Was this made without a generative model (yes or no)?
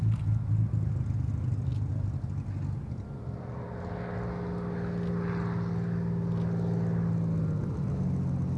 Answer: yes